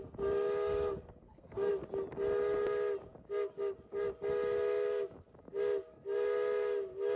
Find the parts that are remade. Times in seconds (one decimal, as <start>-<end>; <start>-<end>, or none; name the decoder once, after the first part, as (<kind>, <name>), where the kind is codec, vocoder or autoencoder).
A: 1.2-1.7 (codec, SNAC)